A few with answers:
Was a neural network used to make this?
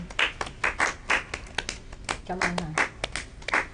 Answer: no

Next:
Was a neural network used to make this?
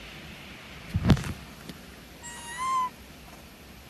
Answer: no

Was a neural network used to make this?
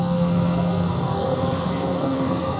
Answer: yes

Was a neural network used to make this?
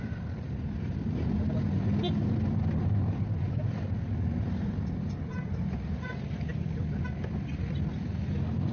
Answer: no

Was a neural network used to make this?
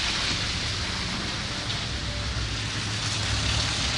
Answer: no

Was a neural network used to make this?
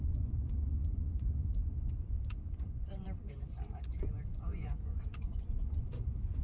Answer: yes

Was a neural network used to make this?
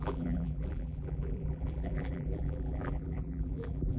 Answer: yes